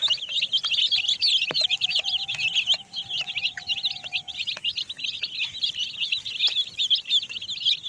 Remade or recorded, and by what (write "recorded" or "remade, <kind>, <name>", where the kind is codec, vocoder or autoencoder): recorded